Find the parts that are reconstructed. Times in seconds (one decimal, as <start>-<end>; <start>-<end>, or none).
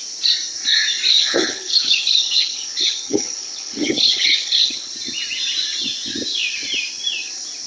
1.1-4.9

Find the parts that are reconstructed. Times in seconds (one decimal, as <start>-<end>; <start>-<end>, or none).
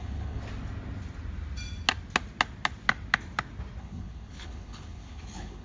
0.0-0.4; 3.8-5.6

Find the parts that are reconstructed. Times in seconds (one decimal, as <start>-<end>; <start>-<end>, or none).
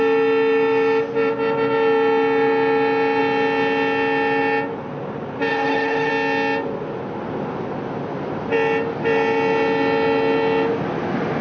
5.5-6.1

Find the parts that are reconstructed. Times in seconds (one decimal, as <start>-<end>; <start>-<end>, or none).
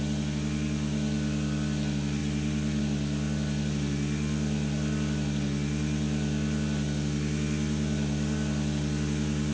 none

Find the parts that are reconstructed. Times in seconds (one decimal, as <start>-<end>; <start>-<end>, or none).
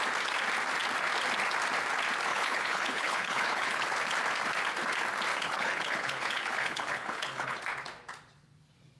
2.3-3.9; 5.3-7.6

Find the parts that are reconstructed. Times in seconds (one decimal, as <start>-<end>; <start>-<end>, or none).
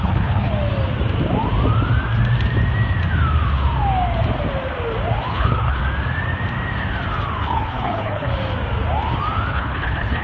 0.0-0.5; 5.3-5.8; 7.4-8.3; 9.5-10.2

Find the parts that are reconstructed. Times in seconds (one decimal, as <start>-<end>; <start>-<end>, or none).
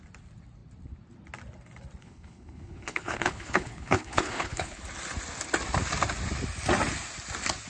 2.0-4.8